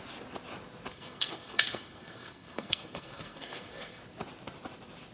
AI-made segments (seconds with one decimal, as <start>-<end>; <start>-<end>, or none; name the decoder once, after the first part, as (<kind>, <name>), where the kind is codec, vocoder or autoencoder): 0.9-4.0 (codec, SNAC)